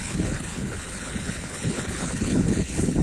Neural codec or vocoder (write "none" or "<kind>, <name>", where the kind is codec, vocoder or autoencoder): codec, HILCodec